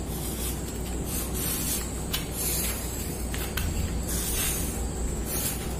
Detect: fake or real real